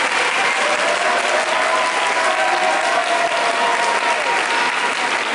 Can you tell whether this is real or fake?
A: real